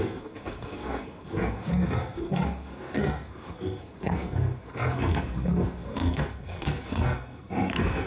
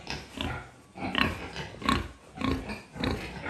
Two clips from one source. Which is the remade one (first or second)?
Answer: first